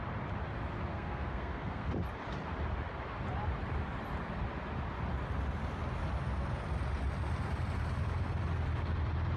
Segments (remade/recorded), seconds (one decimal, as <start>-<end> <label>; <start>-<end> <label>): 0.0-0.9 recorded; 0.9-1.9 remade; 1.9-9.4 recorded